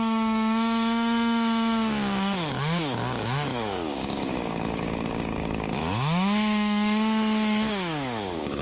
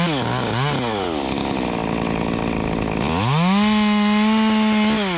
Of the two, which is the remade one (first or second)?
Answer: first